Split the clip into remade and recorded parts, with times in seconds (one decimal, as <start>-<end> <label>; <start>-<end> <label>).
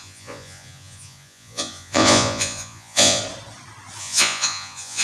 0.0-3.2 remade; 3.2-4.0 recorded; 4.0-5.0 remade